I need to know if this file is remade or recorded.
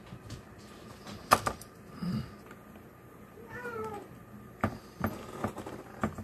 recorded